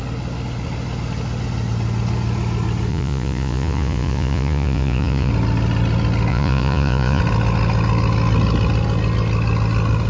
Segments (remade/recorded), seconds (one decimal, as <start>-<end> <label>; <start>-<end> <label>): 0.0-2.9 recorded; 2.9-5.3 remade; 5.3-6.3 recorded; 6.3-7.2 remade; 7.2-10.1 recorded